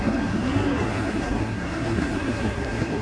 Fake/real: fake